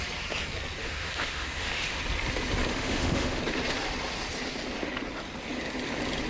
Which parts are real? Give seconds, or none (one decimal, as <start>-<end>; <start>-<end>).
0.0-0.8; 2.0-2.7; 3.4-6.3